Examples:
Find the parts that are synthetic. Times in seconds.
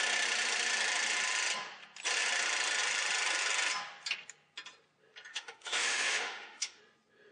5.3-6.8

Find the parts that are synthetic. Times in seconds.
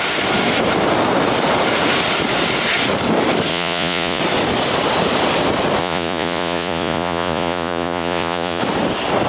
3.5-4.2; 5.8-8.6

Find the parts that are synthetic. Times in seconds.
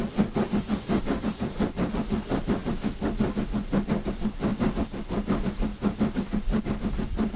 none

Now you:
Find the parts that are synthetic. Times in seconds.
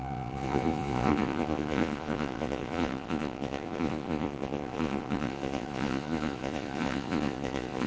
0.0-7.9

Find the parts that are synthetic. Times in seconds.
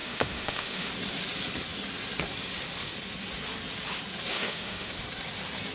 0.0-0.9; 4.3-4.9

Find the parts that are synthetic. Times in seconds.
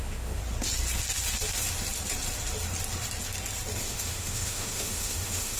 0.0-0.4; 3.8-5.6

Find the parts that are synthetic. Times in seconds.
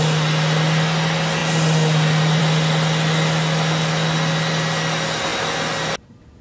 none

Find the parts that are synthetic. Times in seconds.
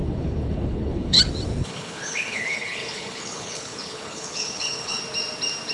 0.0-1.2; 1.6-5.0